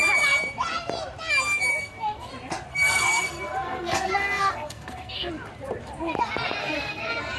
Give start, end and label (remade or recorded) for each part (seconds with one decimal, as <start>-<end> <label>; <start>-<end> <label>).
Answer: 0.0-1.7 recorded; 1.7-2.3 remade; 2.3-2.7 recorded; 2.7-5.3 remade; 5.3-6.6 recorded; 6.6-7.4 remade

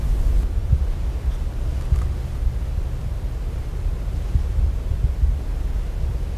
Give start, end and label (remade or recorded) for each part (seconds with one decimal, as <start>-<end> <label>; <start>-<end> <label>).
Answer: 0.0-6.4 recorded

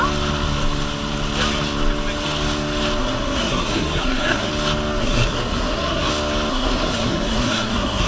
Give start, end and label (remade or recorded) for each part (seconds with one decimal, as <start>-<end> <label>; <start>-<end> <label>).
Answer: 0.0-3.0 recorded; 3.0-4.5 remade; 4.5-5.0 recorded; 5.0-6.1 remade; 6.1-6.5 recorded; 6.5-8.1 remade

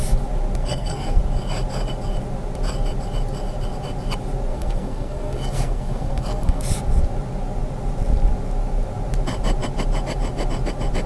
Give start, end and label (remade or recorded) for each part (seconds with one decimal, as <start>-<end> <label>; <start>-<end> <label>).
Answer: 0.0-0.6 recorded; 0.6-1.2 remade; 1.2-4.5 recorded; 4.5-6.6 remade; 6.6-11.1 recorded

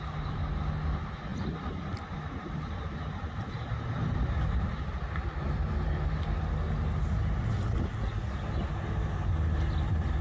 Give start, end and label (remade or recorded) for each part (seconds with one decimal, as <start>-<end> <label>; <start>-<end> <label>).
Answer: 0.0-10.2 recorded

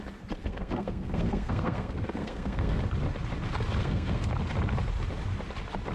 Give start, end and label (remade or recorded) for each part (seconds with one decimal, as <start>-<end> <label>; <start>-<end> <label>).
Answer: 0.0-0.4 recorded; 0.4-2.8 remade; 2.8-3.8 recorded; 3.8-4.3 remade; 4.3-5.9 recorded